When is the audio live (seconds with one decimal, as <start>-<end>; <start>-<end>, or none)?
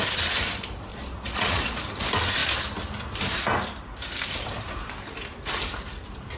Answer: 0.0-0.9; 1.8-6.4